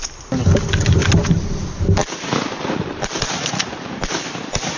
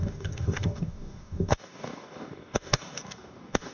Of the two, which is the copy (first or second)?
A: second